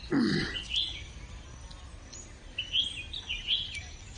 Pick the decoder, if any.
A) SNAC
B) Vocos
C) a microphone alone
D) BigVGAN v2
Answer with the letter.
C